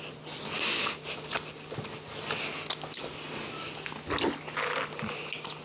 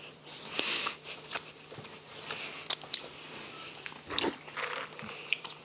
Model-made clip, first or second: second